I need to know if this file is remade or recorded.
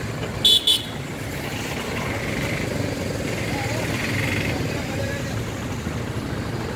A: recorded